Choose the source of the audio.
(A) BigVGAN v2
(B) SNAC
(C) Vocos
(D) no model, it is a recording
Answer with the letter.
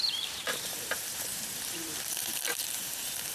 A